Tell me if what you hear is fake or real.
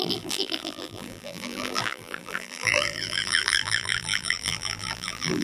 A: fake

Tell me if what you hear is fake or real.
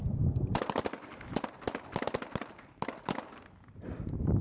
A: real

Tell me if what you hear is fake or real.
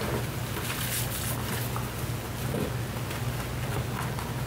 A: real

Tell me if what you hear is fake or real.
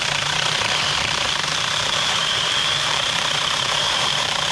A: fake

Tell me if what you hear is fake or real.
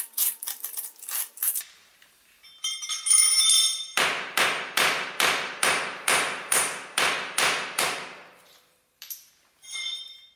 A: fake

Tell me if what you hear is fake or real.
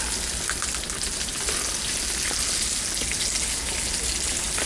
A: real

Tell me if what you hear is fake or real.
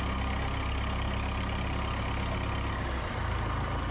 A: real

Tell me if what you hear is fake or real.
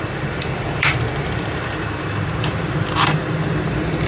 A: fake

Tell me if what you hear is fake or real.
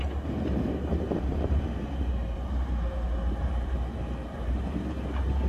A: fake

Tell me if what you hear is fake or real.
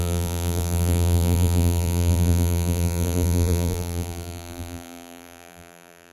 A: fake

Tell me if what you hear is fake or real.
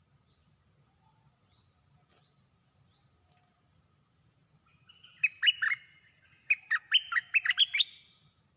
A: real